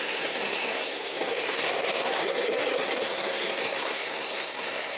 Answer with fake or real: fake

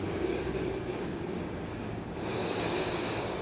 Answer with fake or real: fake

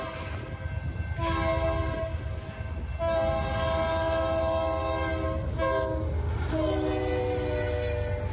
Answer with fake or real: real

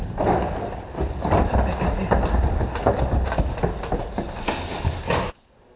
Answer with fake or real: real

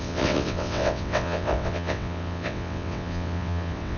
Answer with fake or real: fake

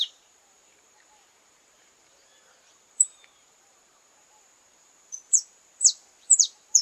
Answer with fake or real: fake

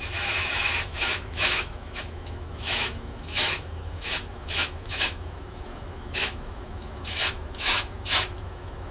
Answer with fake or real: fake